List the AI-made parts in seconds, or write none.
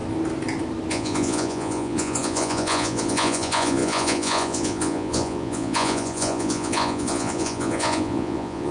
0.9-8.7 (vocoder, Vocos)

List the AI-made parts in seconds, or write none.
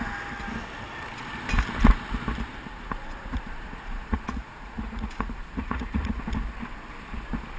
2.7-6.2 (vocoder, Vocos)